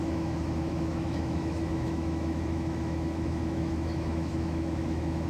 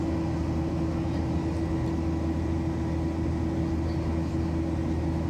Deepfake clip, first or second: first